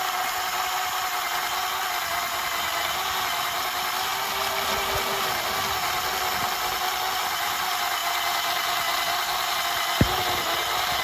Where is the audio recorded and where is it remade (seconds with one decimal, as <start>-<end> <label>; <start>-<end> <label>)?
0.0-11.0 recorded